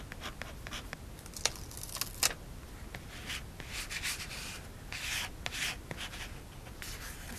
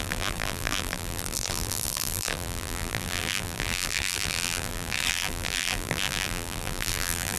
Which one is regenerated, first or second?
second